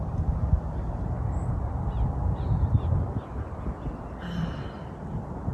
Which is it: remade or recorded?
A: recorded